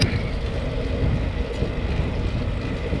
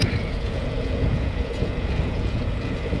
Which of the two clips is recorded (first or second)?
first